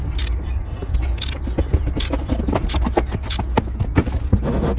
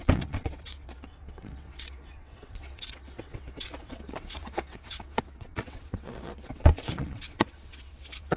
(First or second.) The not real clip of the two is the second